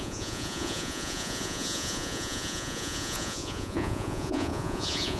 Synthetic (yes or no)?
yes